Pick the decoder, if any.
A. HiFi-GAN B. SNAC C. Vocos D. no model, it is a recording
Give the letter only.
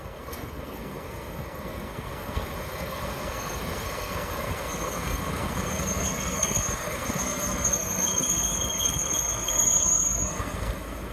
B